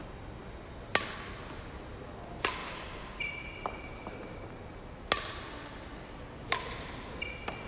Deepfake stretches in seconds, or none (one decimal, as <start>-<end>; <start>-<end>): 2.6-4.6

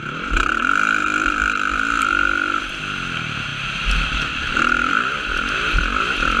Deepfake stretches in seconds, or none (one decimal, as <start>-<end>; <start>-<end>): 1.0-2.6; 3.5-5.3

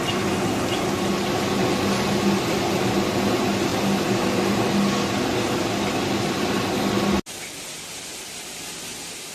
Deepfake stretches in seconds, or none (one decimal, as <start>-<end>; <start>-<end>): none

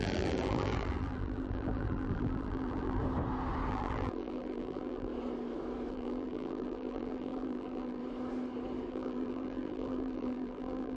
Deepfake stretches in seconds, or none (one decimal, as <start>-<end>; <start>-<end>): 0.0-3.0; 3.7-5.1; 5.9-8.0; 8.9-11.0

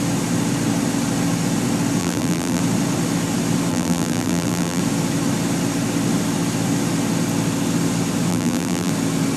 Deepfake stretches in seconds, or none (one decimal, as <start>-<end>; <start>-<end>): 2.0-2.6; 3.7-4.8; 8.3-8.9

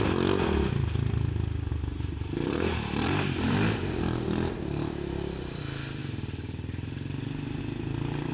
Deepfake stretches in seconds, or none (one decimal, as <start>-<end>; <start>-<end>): 1.7-5.6; 6.0-7.6

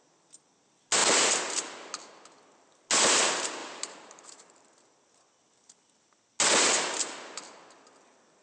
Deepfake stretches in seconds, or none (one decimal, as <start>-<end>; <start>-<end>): 3.6-4.5

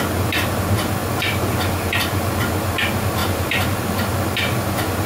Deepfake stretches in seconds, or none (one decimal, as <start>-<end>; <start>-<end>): 3.2-3.8